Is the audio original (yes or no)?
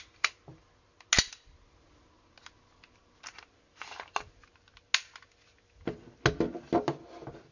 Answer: yes